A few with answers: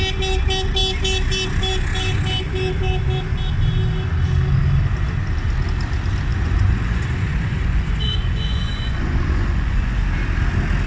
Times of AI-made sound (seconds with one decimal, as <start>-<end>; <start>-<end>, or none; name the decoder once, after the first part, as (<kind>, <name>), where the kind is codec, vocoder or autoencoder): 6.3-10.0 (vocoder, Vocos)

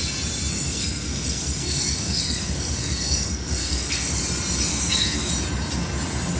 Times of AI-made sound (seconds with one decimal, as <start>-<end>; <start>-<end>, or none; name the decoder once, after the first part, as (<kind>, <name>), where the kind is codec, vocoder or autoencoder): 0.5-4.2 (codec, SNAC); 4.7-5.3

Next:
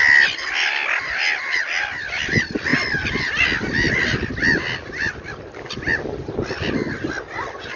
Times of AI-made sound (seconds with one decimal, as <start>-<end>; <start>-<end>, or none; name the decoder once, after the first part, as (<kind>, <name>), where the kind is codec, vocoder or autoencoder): none

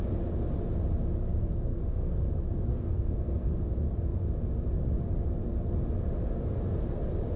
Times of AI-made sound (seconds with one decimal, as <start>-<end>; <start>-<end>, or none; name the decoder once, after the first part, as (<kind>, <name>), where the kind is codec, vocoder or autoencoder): 1.4-2.3 (codec, SNAC); 2.7-3.5

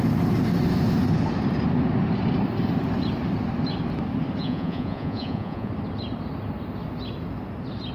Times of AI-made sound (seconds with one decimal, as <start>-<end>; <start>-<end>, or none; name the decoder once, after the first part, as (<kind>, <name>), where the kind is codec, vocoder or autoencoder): 4.4-5.7 (vocoder, Vocos)

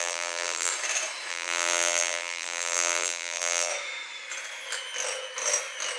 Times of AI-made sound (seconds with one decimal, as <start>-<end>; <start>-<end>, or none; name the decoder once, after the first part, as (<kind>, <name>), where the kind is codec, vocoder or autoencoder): 0.0-0.7 (vocoder, BigVGAN v2); 1.3-3.7